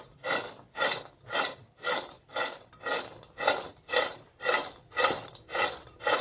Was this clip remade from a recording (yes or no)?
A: no